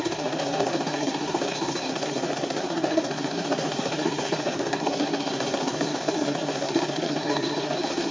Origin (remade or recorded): remade